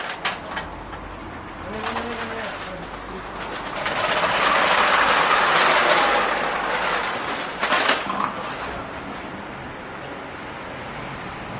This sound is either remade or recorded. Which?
recorded